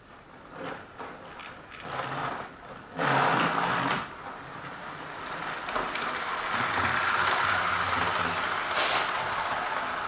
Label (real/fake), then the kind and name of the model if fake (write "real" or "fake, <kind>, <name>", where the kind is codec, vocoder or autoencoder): real